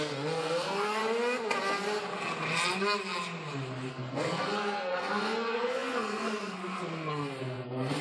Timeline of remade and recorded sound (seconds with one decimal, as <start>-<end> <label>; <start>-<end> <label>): 0.0-1.0 remade; 1.0-3.9 recorded; 3.9-8.0 remade